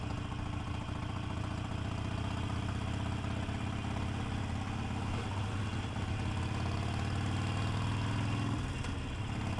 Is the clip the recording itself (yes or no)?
yes